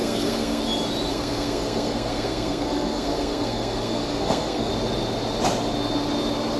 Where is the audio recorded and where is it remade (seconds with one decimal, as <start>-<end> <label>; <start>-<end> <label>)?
0.0-0.6 remade; 0.6-1.1 recorded; 1.1-4.7 remade; 4.7-6.6 recorded